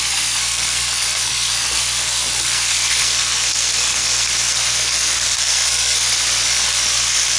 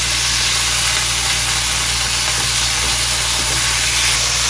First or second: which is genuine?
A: second